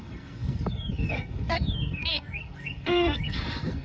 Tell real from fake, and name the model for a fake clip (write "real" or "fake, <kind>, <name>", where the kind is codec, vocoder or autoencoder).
fake, codec, SNAC